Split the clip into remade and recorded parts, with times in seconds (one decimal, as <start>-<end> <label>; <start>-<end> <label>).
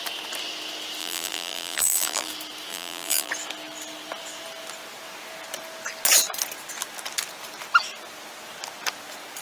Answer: 0.0-1.0 recorded; 1.0-2.3 remade; 2.3-2.7 recorded; 2.7-3.3 remade; 3.3-9.4 recorded